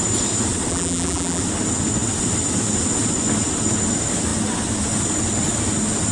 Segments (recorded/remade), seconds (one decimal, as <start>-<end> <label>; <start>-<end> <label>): 0.0-0.7 recorded; 0.7-1.4 remade; 1.4-6.1 recorded